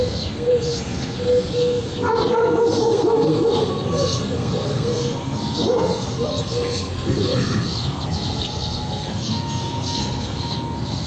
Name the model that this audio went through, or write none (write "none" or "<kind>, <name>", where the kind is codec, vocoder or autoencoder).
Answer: codec, SNAC